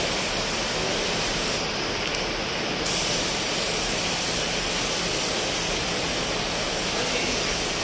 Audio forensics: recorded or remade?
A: recorded